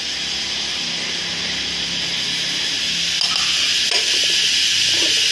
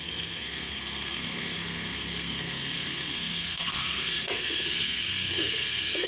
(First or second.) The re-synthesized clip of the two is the second